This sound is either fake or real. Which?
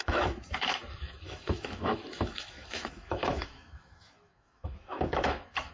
fake